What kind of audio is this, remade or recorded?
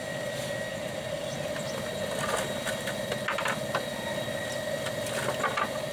recorded